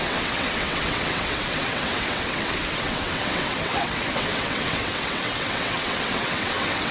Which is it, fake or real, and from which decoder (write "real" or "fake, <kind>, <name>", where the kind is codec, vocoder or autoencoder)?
fake, vocoder, WaveNeXt